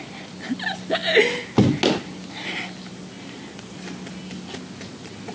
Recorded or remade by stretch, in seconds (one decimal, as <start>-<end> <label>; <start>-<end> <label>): 0.0-5.3 recorded